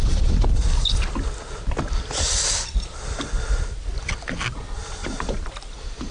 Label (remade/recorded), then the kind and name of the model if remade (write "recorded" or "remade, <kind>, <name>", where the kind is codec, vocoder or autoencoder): recorded